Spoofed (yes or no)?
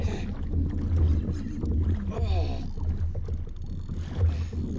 no